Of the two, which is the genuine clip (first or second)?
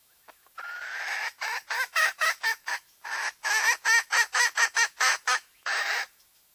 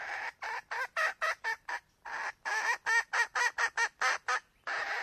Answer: second